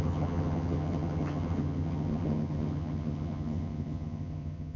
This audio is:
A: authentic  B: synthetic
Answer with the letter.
B